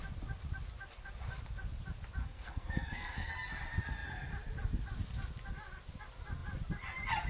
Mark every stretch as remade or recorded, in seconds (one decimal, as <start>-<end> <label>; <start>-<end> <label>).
0.0-2.2 recorded; 2.2-3.3 remade; 3.3-7.3 recorded

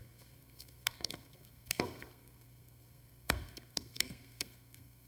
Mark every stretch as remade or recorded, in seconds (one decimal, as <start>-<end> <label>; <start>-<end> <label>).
0.0-5.1 remade

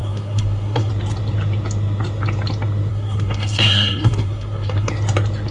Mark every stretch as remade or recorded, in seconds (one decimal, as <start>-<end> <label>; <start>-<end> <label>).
0.0-0.9 remade; 0.9-2.9 recorded; 2.9-4.9 remade; 4.9-5.5 recorded

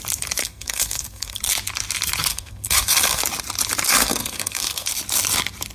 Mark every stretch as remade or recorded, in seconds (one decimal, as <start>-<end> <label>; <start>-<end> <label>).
0.0-0.4 recorded; 0.4-1.4 remade; 1.4-2.3 recorded; 2.3-3.2 remade; 3.2-4.0 recorded; 4.0-4.9 remade; 4.9-5.7 recorded

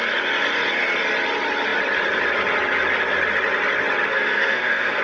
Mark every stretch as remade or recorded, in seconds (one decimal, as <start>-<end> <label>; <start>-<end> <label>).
0.0-4.1 recorded; 4.1-5.0 remade

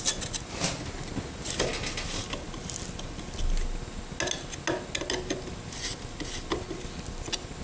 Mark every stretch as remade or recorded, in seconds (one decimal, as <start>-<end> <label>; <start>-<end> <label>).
0.0-7.6 recorded

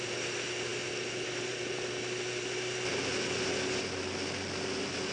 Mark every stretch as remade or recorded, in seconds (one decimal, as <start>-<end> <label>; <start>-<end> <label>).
0.0-5.1 recorded